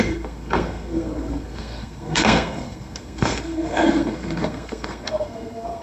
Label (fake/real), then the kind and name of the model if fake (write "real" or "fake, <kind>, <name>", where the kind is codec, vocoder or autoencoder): fake, codec, SNAC